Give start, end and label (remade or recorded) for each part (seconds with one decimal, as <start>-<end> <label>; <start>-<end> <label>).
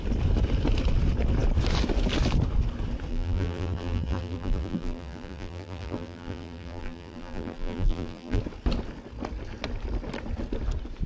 0.0-3.1 recorded; 3.1-8.4 remade; 8.4-11.1 recorded